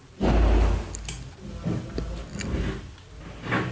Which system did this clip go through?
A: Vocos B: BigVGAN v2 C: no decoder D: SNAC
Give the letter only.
C